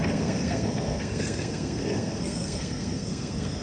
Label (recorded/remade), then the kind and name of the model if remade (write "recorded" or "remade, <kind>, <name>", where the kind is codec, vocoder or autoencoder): remade, codec, SNAC